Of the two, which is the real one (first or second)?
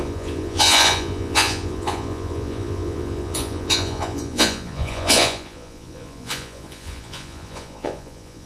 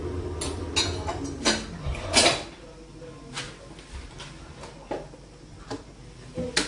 second